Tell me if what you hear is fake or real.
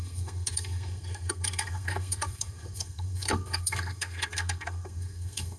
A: fake